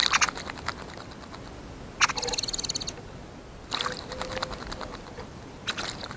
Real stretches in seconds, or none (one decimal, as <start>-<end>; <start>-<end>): 0.0-6.2